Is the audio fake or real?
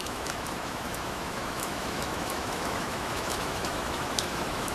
fake